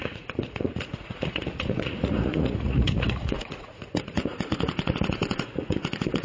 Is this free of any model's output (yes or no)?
no